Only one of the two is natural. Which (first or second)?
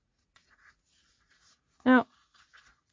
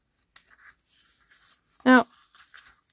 second